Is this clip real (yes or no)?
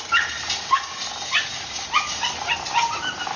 yes